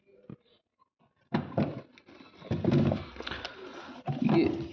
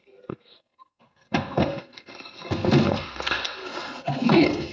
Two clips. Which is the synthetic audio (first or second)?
second